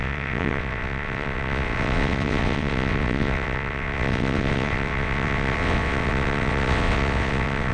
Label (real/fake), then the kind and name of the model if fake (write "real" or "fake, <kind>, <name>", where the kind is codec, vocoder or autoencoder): fake, vocoder, WaveNeXt